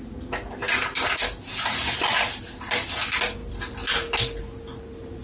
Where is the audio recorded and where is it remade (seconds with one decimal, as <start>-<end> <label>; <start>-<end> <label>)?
0.0-5.2 recorded